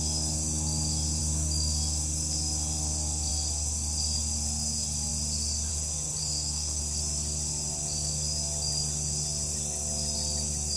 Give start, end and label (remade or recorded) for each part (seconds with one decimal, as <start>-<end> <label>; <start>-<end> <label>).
0.0-6.2 recorded; 6.2-6.8 remade; 6.8-10.8 recorded